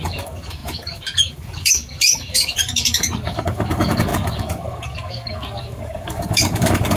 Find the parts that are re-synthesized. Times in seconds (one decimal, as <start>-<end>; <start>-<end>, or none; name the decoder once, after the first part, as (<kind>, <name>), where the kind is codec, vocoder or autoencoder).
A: 0.0-7.0 (codec, DAC)